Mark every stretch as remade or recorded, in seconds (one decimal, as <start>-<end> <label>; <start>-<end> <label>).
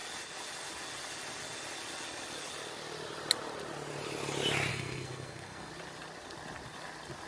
0.0-4.7 recorded; 4.7-5.7 remade; 5.7-7.3 recorded